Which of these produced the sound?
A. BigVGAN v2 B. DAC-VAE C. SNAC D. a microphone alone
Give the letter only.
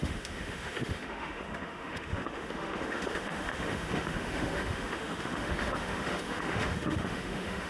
B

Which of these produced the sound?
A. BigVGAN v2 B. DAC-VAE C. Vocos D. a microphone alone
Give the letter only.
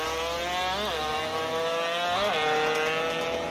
D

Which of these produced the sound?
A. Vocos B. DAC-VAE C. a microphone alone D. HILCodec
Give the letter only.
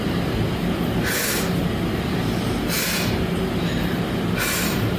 C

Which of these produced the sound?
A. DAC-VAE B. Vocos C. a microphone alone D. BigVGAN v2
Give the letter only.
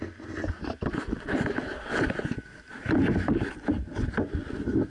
C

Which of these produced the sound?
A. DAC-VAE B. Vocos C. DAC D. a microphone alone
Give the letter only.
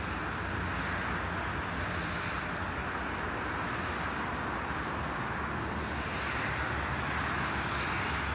D